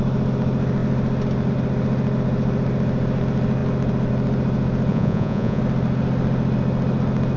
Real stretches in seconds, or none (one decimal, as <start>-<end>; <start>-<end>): 0.0-4.9; 5.6-7.4